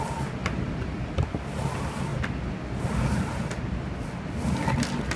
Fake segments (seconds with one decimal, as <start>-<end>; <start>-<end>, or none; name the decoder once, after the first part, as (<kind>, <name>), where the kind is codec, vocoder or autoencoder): none